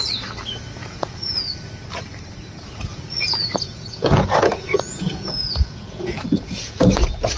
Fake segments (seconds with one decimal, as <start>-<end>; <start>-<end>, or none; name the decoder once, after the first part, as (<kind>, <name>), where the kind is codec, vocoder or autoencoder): 0.8-1.4 (vocoder, Vocos); 2.9-6.9